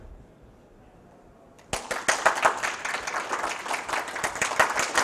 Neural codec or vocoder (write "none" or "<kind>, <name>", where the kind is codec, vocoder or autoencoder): none